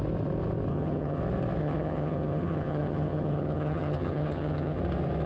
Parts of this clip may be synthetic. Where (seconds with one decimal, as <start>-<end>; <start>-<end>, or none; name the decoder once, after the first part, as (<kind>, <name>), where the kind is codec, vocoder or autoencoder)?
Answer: 0.7-1.2 (vocoder, HiFi-GAN); 1.6-4.8